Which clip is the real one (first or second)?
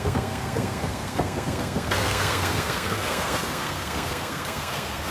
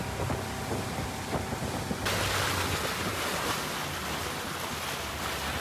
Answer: second